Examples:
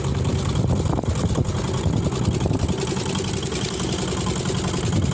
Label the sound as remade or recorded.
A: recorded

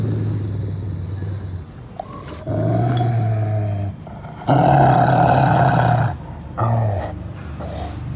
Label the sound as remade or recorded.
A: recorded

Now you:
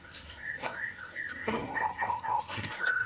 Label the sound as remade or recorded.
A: remade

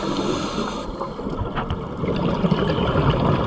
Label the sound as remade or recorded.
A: recorded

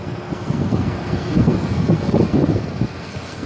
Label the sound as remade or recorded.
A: remade